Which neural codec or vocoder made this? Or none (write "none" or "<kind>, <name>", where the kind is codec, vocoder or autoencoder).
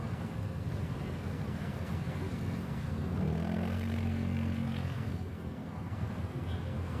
codec, SNAC